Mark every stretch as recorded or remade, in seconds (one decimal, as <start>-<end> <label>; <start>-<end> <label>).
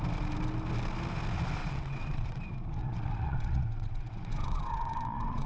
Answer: 0.0-1.6 recorded; 1.6-2.4 remade; 2.4-2.8 recorded; 2.8-5.5 remade